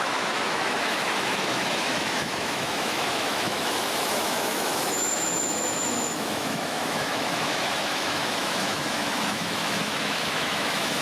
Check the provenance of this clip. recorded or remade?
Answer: remade